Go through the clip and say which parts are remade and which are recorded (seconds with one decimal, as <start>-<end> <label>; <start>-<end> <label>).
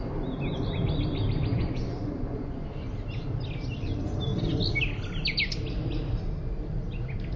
0.0-1.5 recorded; 1.5-2.7 remade; 2.7-7.4 recorded